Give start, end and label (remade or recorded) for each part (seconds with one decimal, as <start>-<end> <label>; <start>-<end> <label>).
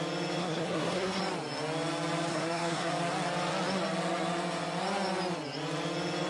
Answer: 0.0-0.4 recorded; 0.4-1.2 remade; 1.2-2.3 recorded; 2.3-2.9 remade; 2.9-6.3 recorded